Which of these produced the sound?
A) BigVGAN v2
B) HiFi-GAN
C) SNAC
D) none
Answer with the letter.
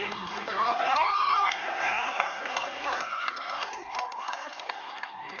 C